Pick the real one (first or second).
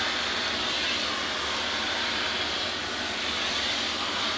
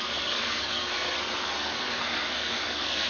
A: first